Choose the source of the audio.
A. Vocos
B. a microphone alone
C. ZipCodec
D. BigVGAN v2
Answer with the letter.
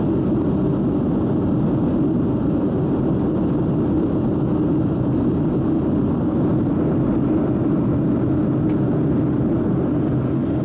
B